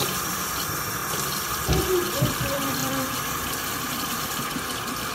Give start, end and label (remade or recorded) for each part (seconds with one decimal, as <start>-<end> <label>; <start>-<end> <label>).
0.0-1.0 remade; 1.0-2.3 recorded; 2.3-5.1 remade